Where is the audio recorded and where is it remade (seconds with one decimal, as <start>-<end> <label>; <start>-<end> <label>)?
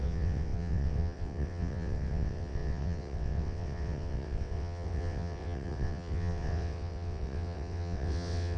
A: 0.0-8.6 remade